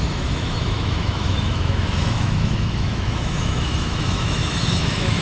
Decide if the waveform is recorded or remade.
remade